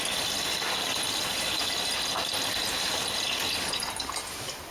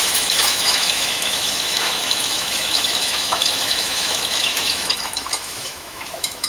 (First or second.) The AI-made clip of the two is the second